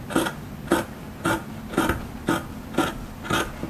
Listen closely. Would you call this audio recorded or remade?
recorded